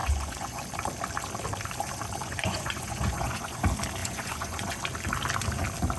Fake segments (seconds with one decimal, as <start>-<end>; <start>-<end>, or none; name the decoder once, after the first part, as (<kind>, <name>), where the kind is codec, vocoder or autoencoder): 0.0-0.6 (vocoder, Vocos); 2.2-3.6; 4.0-4.8